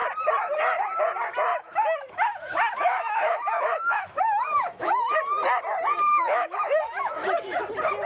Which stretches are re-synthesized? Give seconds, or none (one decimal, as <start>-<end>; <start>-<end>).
1.5-5.2; 6.1-7.6